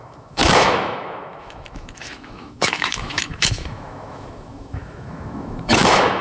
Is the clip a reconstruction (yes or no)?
yes